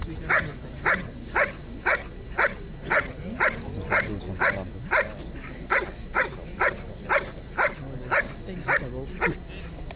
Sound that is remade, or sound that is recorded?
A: recorded